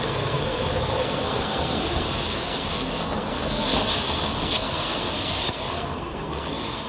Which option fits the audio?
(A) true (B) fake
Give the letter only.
B